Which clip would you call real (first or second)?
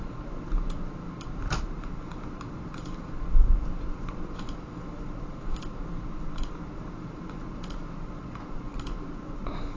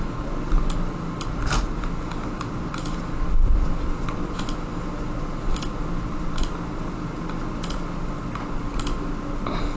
second